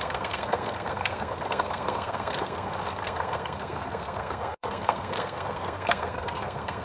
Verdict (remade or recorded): remade